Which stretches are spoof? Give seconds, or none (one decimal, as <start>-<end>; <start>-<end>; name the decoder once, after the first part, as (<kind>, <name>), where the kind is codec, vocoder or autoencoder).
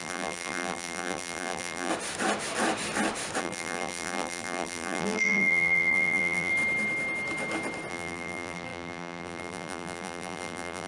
0.0-1.9 (vocoder, BigVGAN v2); 3.4-6.5; 7.9-10.9